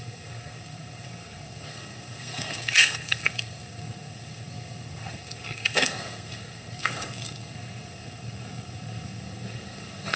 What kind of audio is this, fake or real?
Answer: fake